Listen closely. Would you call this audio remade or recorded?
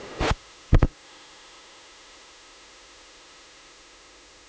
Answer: remade